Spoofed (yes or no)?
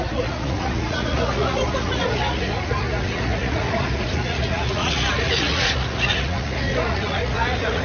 yes